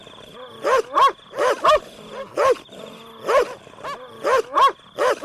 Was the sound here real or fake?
real